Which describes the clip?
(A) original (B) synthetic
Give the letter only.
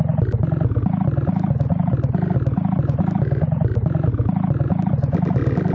A